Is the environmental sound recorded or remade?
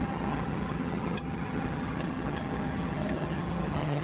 remade